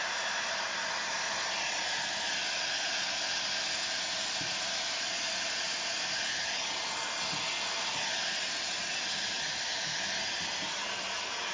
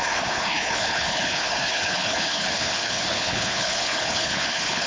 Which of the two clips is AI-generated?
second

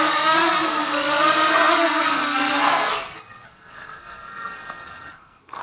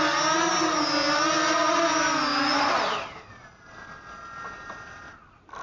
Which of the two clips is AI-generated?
first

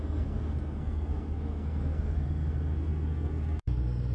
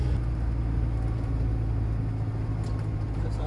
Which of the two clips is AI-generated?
first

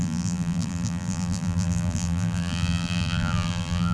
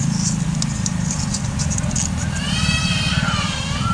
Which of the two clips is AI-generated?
first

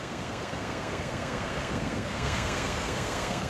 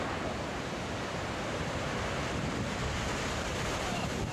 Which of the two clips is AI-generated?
first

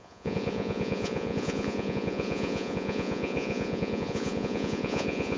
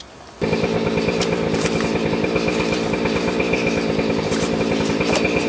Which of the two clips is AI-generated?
first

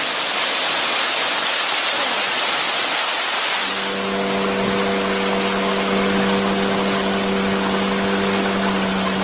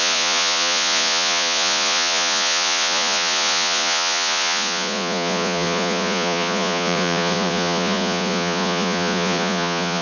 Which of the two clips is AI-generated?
second